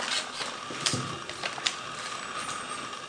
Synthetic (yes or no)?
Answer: no